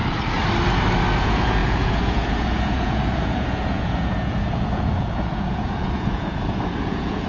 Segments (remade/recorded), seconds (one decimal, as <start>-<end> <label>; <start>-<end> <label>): 0.0-1.2 recorded; 1.2-7.3 remade